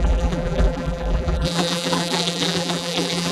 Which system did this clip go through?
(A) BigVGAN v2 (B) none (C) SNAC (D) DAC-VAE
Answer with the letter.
A